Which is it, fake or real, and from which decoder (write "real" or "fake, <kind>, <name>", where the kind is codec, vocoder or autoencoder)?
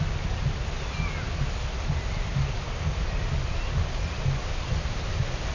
real